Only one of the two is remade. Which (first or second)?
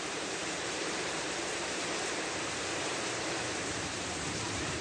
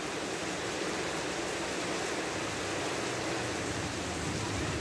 first